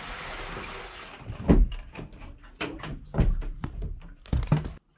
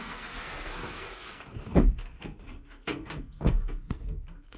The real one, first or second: first